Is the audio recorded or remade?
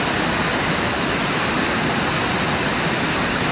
recorded